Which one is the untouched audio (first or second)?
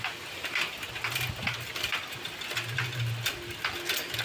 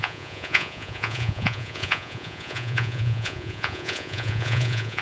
first